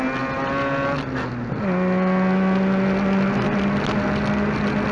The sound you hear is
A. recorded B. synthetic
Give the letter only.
A